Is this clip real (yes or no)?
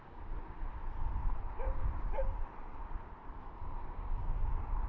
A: yes